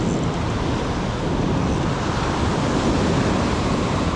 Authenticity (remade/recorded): recorded